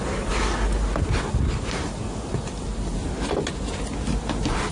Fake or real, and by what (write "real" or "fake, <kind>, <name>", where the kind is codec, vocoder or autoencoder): real